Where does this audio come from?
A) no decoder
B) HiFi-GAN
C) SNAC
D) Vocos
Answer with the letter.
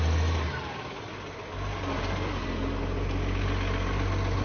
A